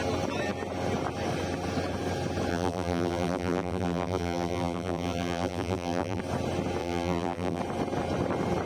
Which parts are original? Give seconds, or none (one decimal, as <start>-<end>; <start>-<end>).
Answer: 0.0-2.5; 6.2-6.8; 7.6-8.7